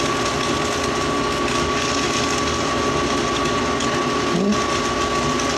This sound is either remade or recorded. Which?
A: recorded